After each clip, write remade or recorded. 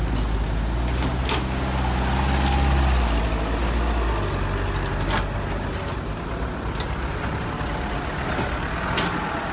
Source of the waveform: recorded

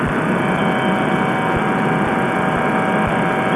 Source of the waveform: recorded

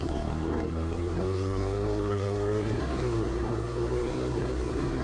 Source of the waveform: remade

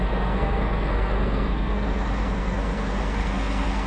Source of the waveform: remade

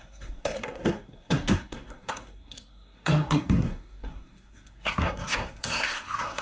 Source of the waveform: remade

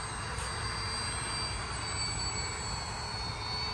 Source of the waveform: recorded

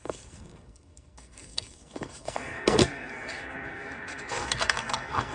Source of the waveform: remade